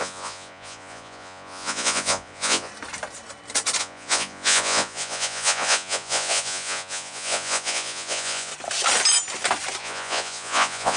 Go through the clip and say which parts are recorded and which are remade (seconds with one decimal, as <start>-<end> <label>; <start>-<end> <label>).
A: 0.0-2.7 remade; 2.7-3.8 recorded; 3.8-8.5 remade; 8.5-9.8 recorded; 9.8-11.0 remade